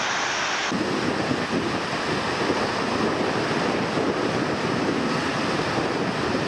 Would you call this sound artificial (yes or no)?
no